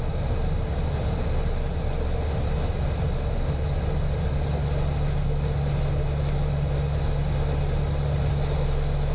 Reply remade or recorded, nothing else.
recorded